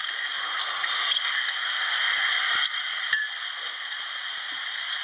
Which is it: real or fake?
fake